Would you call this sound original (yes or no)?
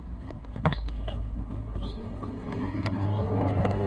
no